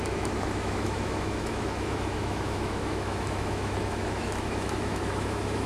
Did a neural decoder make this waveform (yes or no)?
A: yes